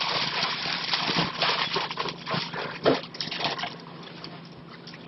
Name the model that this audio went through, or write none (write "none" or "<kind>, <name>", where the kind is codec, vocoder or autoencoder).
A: none